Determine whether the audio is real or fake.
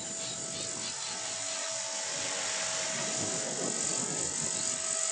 real